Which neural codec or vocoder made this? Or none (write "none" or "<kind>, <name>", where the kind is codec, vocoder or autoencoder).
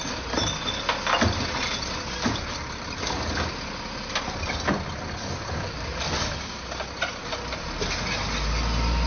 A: none